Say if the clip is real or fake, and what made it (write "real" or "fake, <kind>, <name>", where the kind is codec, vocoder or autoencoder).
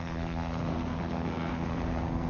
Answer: fake, codec, SNAC